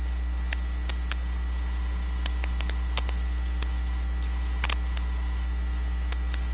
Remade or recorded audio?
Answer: recorded